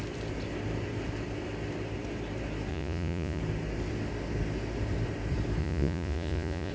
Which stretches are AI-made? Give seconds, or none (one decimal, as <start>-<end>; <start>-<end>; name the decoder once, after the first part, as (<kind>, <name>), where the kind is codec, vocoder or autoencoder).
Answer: 2.7-3.4 (vocoder, Vocos); 5.6-6.7